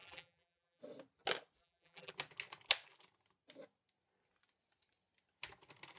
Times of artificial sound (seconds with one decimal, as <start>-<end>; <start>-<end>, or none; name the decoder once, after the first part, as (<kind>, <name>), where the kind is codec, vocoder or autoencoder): 0.0-0.8 (vocoder, BigVGAN v2); 1.6-2.1